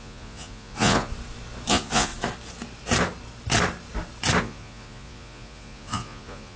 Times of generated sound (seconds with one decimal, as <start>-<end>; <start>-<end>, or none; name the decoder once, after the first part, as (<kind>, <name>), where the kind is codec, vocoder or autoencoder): 0.0-1.1 (vocoder, Vocos); 1.7-2.1; 4.4-6.6